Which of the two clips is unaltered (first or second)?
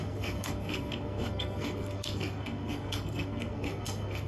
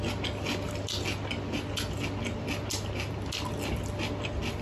second